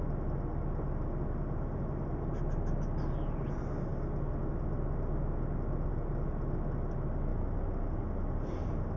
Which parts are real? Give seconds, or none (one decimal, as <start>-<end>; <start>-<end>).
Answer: 0.0-9.0